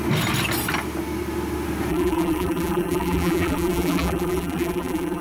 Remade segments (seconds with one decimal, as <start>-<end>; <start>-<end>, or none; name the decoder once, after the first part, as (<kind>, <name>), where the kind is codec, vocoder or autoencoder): 1.9-5.2 (vocoder, BigVGAN v2)